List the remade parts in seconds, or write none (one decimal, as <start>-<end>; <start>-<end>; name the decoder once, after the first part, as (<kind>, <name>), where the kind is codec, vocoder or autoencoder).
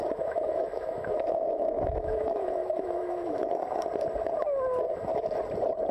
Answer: 0.0-3.5 (autoencoder, DAC-VAE)